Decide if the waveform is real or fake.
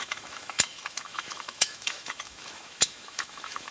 fake